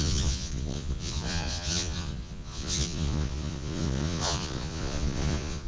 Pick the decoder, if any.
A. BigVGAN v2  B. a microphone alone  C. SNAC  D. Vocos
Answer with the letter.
D